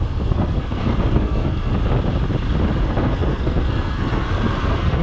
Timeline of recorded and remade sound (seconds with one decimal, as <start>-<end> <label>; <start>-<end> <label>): 0.0-1.7 remade; 1.7-2.8 recorded; 2.8-5.0 remade